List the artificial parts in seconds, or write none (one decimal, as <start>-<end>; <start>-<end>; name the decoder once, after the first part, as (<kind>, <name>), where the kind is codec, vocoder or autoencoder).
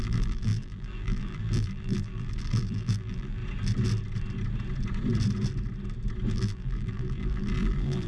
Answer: 0.0-3.4 (vocoder, BigVGAN v2); 6.3-8.1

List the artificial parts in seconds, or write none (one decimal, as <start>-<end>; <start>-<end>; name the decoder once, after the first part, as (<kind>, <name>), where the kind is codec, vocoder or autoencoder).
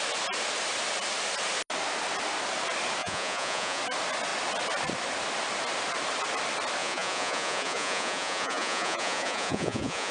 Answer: 3.0-3.8 (vocoder, Vocos); 6.8-10.1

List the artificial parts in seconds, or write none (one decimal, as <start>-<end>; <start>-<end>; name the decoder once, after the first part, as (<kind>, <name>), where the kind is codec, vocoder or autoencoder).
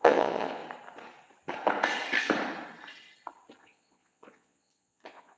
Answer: 0.0-0.6 (vocoder, Vocos); 3.6-5.4